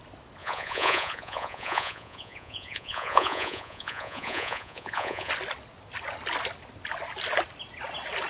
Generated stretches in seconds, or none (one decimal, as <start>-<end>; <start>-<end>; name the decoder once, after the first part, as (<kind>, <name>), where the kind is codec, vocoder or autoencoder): 0.4-5.3 (vocoder, Vocos)